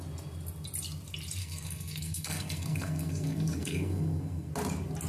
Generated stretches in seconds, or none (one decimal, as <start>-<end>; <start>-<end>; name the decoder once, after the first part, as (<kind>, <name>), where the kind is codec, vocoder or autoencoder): 1.4-4.5 (codec, SNAC)